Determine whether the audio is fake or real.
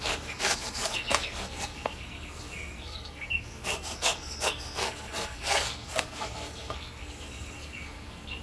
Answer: fake